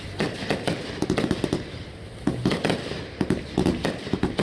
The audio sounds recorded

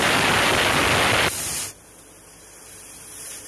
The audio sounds recorded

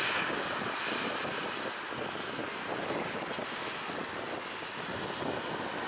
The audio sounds recorded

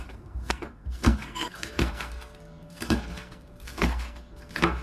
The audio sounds remade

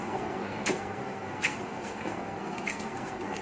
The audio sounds remade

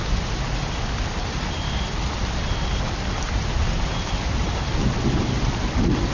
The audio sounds recorded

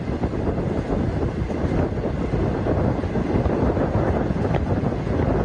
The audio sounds recorded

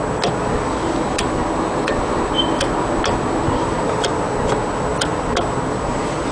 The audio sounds recorded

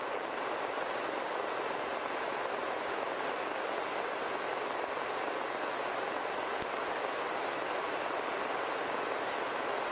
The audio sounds recorded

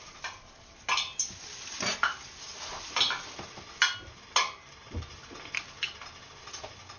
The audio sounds recorded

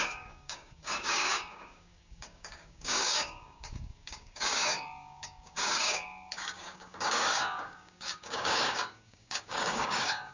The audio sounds remade